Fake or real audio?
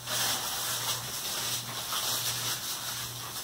real